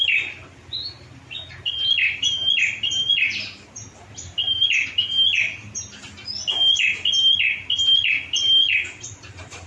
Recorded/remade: recorded